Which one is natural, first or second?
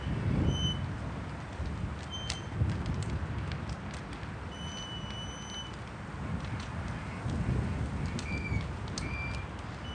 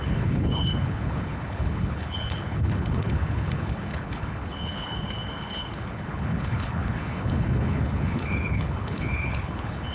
first